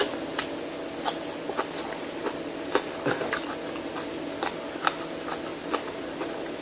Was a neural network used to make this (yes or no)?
no